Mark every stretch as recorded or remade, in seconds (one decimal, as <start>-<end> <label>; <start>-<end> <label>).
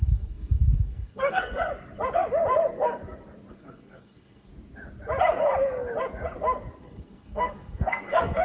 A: 0.0-1.7 remade; 1.7-3.5 recorded; 3.5-4.5 remade; 4.5-6.8 recorded; 6.8-8.4 remade